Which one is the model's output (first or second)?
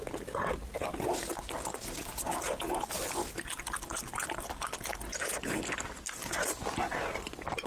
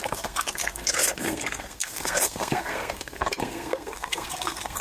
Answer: second